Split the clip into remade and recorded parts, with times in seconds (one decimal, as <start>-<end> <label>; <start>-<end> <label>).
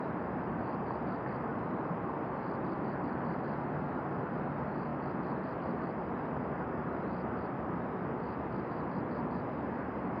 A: 0.0-1.5 recorded; 1.5-2.3 remade; 2.3-10.2 recorded